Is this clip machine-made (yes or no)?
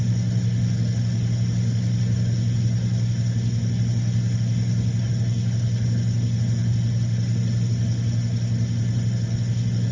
no